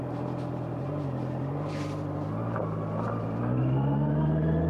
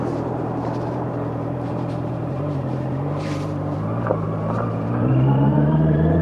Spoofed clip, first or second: second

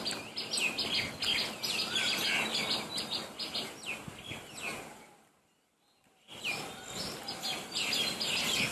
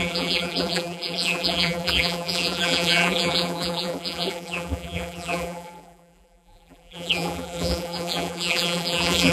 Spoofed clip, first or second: second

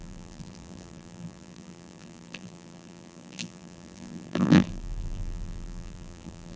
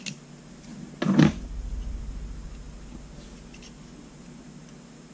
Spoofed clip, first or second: first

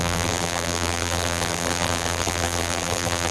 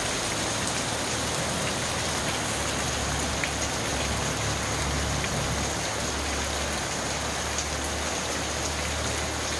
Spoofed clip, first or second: first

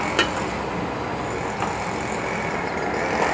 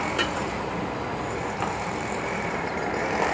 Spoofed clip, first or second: second